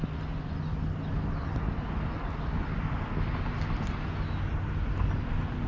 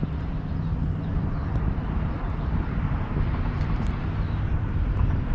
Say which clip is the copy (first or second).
second